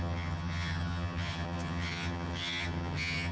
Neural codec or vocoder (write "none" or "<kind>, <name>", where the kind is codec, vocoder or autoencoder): vocoder, HiFi-GAN